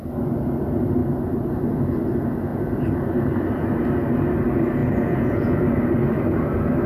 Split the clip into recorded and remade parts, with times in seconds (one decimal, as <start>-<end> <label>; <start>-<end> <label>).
0.0-4.8 recorded; 4.8-5.8 remade; 5.8-6.9 recorded